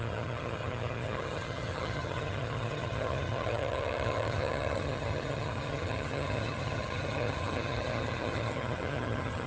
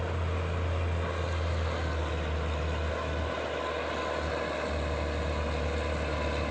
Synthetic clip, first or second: first